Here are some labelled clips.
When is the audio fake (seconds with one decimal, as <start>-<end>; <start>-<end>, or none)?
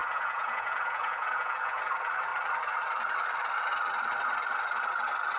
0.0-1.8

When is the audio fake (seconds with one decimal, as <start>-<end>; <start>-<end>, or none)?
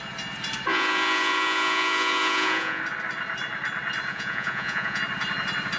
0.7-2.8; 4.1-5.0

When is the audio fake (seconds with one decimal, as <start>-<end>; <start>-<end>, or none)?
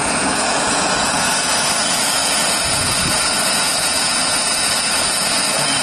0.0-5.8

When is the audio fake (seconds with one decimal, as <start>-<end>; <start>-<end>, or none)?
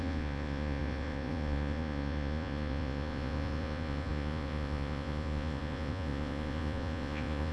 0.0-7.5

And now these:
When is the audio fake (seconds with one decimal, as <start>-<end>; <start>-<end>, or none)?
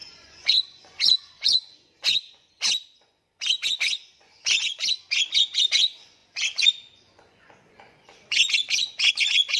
0.0-9.6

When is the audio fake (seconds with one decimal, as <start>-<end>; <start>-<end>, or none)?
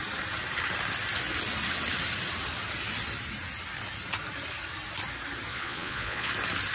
5.5-6.3